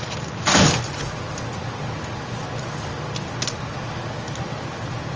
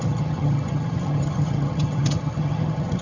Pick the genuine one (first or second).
first